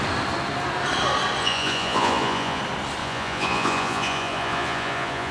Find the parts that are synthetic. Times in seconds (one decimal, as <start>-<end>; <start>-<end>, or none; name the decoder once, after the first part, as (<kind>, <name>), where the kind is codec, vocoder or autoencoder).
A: 1.4-2.6 (vocoder, Vocos); 3.0-5.3